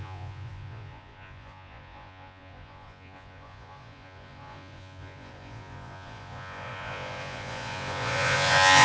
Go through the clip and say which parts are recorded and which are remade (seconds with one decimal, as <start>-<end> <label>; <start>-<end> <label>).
0.0-8.8 remade